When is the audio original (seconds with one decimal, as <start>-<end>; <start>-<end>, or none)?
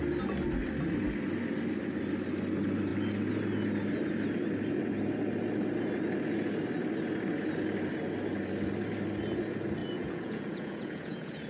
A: 0.0-9.8